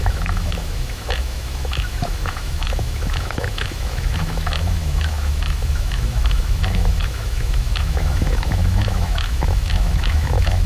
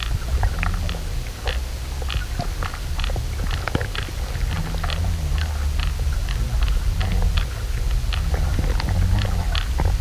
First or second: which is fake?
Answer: first